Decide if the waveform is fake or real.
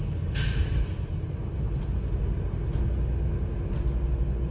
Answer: real